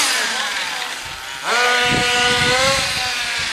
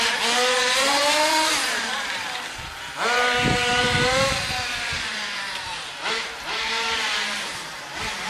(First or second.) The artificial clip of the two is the second